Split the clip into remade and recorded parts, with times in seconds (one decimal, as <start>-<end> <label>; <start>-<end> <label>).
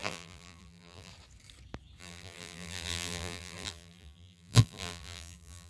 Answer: 0.0-1.1 remade; 1.1-2.0 recorded; 2.0-5.7 remade